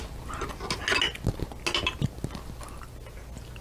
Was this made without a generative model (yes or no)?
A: yes